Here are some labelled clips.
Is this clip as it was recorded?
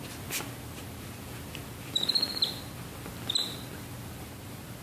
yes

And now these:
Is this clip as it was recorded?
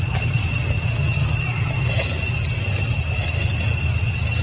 yes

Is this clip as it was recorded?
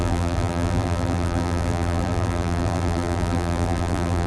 no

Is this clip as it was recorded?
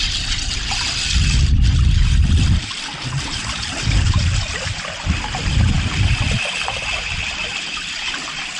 yes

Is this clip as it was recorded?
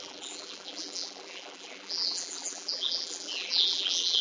no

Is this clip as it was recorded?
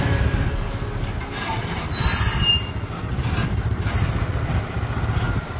yes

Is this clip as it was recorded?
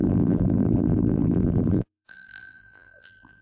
no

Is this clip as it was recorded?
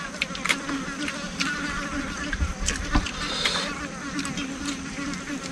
yes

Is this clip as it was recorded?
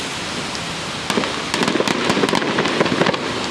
yes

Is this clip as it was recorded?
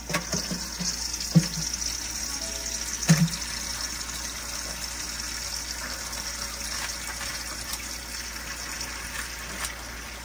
yes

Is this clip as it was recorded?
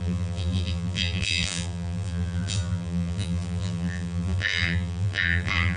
no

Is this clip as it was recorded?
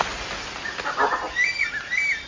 yes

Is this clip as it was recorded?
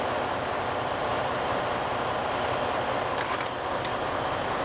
yes